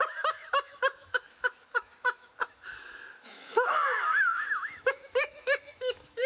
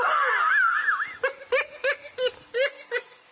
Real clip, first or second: second